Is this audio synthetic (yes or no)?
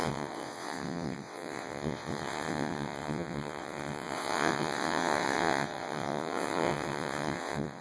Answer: yes